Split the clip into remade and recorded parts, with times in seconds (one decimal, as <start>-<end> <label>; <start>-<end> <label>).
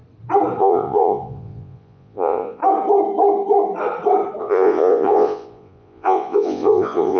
0.0-0.6 recorded; 0.6-2.6 remade; 2.6-4.4 recorded; 4.4-7.2 remade